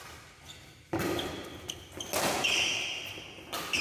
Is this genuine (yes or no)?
yes